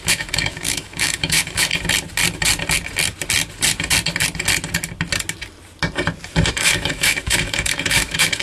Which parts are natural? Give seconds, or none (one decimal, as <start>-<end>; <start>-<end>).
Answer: 1.7-6.5